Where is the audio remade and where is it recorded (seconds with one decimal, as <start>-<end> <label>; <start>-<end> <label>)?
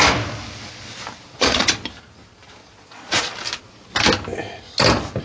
0.0-1.3 recorded; 1.3-1.8 remade; 1.8-2.6 recorded; 2.6-3.3 remade; 3.3-5.2 recorded